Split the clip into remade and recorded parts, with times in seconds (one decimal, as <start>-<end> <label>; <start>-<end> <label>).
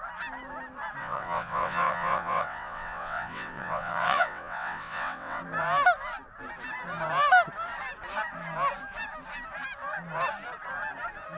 0.0-1.0 recorded; 1.0-5.4 remade; 5.4-11.4 recorded